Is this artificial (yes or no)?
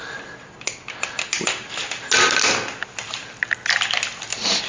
no